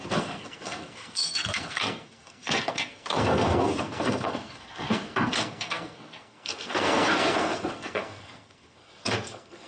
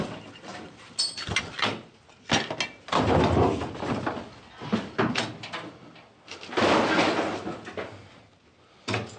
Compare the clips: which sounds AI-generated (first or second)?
first